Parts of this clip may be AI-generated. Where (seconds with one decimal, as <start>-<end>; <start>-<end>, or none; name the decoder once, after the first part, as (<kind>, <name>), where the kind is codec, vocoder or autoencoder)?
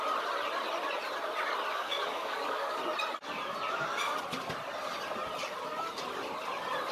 1.7-2.8 (codec, DAC)